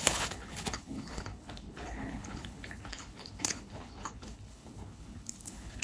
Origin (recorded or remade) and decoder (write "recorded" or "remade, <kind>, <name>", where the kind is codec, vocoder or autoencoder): remade, codec, HILCodec